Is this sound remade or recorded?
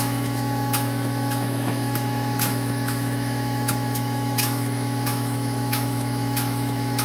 remade